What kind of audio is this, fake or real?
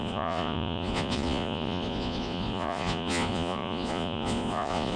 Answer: fake